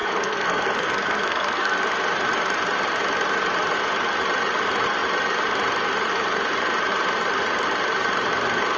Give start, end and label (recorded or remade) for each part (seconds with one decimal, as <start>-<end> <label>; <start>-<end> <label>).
0.0-1.8 remade; 1.8-8.8 recorded